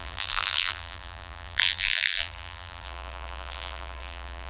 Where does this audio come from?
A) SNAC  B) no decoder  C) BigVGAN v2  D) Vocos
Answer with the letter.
C